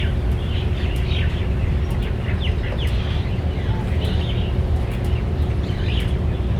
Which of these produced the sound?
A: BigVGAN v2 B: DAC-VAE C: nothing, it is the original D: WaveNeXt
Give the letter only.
C